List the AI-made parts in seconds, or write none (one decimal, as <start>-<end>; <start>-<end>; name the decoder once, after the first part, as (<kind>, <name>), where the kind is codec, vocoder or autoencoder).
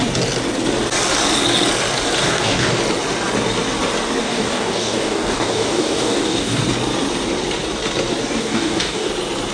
2.2-2.8 (codec, DAC); 4.2-6.6; 8.4-9.1